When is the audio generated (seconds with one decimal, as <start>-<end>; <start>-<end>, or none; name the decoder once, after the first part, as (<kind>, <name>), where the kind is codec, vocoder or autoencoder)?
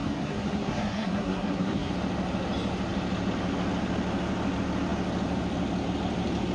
0.0-1.9 (codec, SNAC)